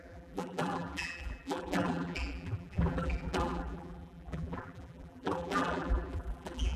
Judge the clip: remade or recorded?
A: remade